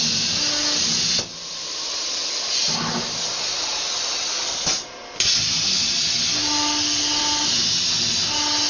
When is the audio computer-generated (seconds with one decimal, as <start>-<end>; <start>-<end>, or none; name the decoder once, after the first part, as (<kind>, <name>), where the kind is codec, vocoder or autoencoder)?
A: none